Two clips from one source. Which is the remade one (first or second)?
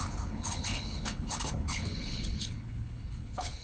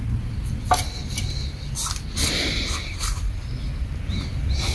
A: first